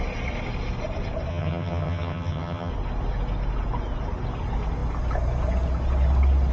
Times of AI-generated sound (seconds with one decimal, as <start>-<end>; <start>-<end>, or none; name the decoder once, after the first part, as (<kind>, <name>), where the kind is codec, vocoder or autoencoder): 1.3-2.7 (vocoder, HiFi-GAN)